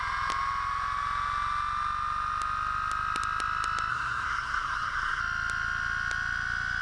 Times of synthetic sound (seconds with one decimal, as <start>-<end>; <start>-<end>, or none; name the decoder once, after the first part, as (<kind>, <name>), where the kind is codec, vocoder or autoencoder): 3.9-5.2 (codec, SNAC)